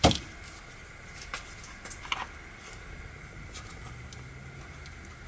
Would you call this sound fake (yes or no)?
no